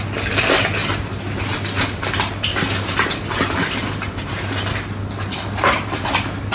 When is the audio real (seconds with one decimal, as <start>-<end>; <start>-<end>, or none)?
0.0-6.5